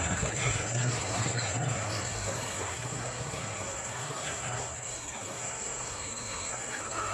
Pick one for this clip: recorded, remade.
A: remade